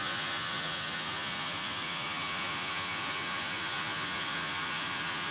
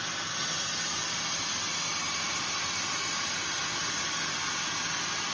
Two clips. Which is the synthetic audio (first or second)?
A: first